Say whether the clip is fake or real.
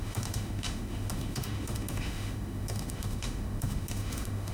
fake